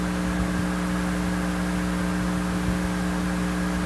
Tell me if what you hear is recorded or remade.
recorded